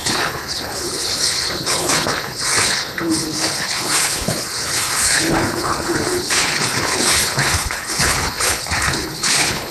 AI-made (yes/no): yes